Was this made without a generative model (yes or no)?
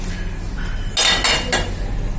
yes